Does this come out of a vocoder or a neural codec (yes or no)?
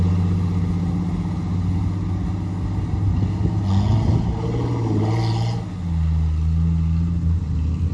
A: no